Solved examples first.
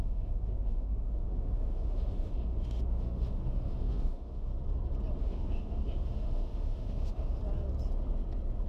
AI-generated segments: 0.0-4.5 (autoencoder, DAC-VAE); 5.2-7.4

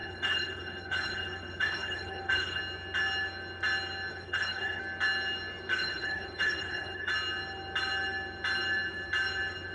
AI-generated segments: 0.0-2.6 (codec, HILCodec); 4.1-4.8; 5.7-7.1

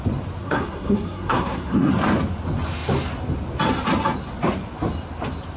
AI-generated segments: 0.4-1.9 (codec, SNAC)

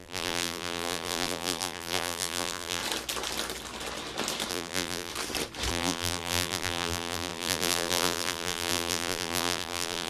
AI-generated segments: 0.0-2.8 (vocoder, BigVGAN v2); 4.5-5.1; 5.7-10.1

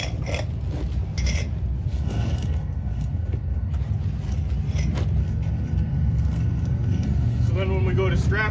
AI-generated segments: 1.9-3.7 (codec, SNAC); 5.2-7.5